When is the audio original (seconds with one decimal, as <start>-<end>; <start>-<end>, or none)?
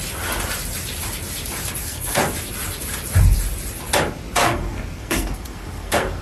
0.0-1.8; 2.3-4.4